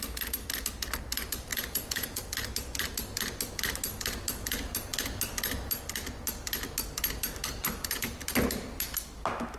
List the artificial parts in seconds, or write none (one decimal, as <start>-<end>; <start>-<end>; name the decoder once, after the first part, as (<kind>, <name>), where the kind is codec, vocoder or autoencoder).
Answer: 1.5-2.2 (vocoder, Vocos)